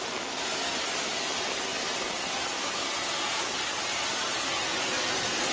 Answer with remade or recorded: recorded